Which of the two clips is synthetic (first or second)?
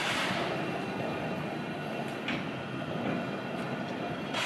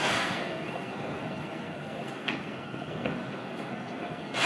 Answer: second